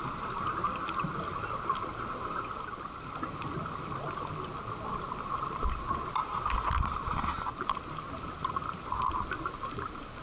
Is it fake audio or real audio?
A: real